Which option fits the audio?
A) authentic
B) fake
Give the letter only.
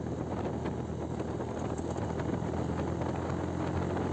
A